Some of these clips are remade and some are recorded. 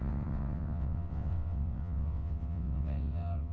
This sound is remade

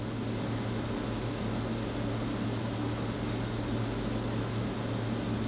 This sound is recorded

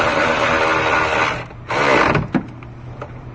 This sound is recorded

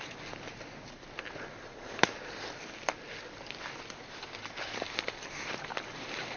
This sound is recorded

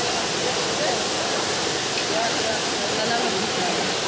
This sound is recorded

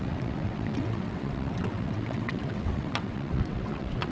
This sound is remade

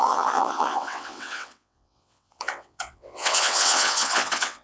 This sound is remade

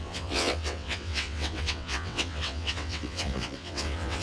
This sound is remade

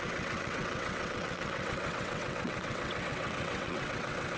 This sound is remade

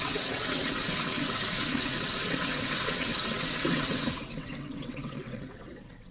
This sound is remade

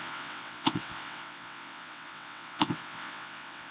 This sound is remade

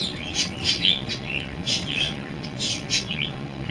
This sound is remade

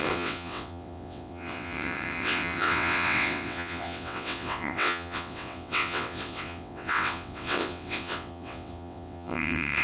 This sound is remade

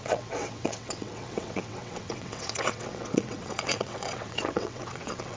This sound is remade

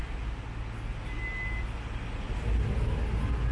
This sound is recorded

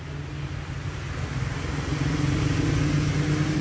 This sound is recorded